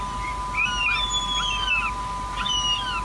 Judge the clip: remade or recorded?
recorded